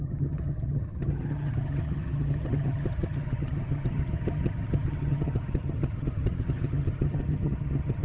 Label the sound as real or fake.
fake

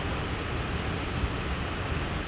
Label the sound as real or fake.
real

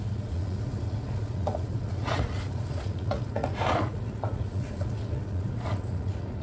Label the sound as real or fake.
fake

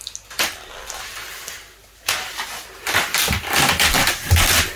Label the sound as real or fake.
real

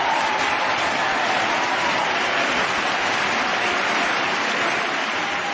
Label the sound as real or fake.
real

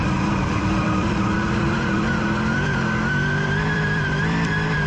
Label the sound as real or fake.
fake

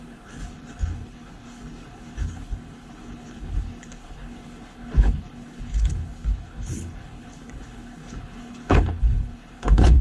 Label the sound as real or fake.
fake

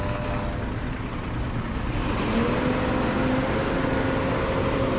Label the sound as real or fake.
real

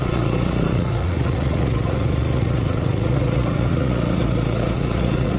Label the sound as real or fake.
fake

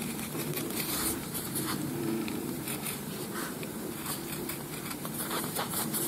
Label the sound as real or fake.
fake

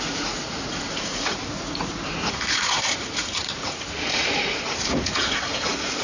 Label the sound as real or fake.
fake